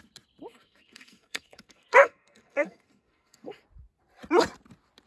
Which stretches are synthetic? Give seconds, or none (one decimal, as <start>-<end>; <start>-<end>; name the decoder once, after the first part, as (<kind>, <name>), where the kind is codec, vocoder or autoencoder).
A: 0.5-3.6 (codec, SNAC)